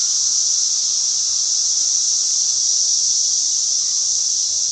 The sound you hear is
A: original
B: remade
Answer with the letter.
A